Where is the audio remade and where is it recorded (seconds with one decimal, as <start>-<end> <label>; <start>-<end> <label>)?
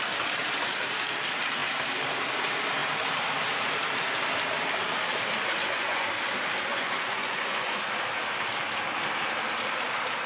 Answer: 0.0-5.6 recorded; 5.6-6.1 remade; 6.1-6.7 recorded; 6.7-7.8 remade; 7.8-10.3 recorded